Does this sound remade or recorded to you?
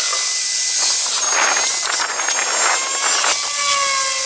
recorded